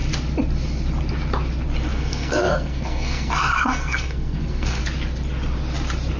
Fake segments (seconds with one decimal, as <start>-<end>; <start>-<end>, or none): 1.9-4.8